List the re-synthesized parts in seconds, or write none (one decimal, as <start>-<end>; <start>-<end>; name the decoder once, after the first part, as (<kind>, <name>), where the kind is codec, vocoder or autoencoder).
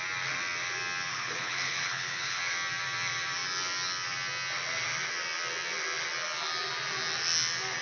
1.1-2.4 (codec, HILCodec)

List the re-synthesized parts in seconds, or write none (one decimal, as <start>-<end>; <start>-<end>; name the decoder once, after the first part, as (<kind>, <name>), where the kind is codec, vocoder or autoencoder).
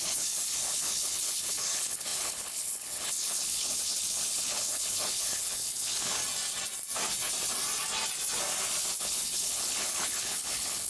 0.0-6.2 (codec, HILCodec); 9.0-10.9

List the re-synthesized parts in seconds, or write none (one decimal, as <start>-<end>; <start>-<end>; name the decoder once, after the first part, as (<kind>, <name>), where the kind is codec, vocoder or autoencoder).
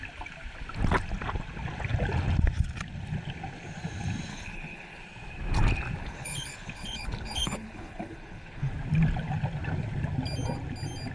4.3-5.0 (codec, HILCodec); 6.0-8.7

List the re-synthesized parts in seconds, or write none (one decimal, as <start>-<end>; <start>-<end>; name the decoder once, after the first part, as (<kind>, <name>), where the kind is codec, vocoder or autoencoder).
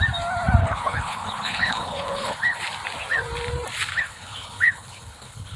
0.6-2.6 (codec, HILCodec); 3.9-5.6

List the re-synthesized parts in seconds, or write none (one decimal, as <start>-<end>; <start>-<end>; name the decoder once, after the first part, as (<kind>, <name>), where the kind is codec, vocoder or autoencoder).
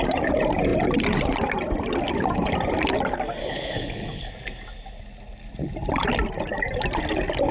3.4-4.3 (codec, HILCodec)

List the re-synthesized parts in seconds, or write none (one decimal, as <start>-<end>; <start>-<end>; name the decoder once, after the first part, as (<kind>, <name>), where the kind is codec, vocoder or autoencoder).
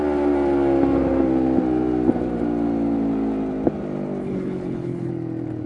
4.2-5.1 (codec, HILCodec)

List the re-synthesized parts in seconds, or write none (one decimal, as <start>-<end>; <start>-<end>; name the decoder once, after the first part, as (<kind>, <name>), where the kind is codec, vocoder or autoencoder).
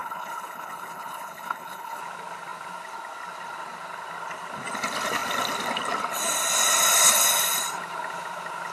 0.0-2.0 (codec, HILCodec)